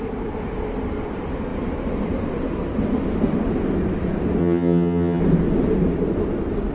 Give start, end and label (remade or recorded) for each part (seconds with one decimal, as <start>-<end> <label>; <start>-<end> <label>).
0.0-4.4 recorded; 4.4-5.2 remade; 5.2-6.7 recorded